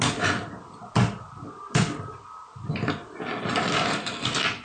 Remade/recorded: recorded